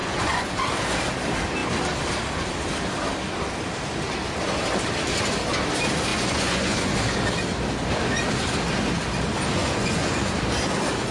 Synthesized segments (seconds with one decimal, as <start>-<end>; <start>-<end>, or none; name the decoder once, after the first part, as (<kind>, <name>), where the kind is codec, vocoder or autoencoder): 0.0-0.6 (vocoder, Vocos); 6.1-6.9; 9.6-10.3